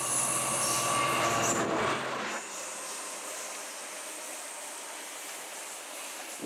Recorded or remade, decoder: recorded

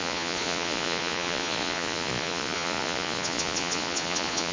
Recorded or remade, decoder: remade, vocoder, Vocos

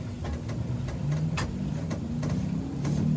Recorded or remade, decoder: recorded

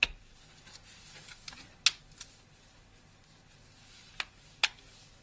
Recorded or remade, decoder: recorded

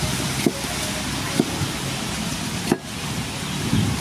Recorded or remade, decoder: recorded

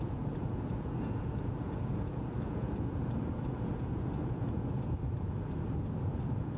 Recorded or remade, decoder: remade, vocoder, Vocos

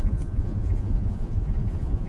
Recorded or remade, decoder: remade, vocoder, Vocos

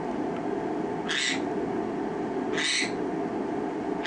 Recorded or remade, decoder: recorded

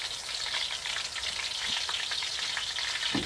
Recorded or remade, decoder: recorded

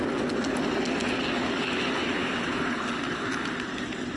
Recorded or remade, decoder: recorded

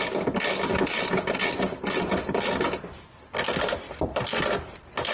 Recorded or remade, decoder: recorded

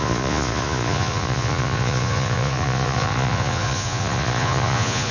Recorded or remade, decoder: remade, vocoder, Vocos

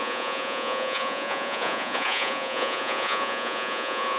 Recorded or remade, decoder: remade, vocoder, Vocos